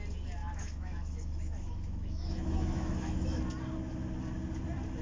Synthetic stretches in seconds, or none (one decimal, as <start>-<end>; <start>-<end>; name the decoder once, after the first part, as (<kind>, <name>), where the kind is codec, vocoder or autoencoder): 0.4-3.4 (autoencoder, DAC-VAE)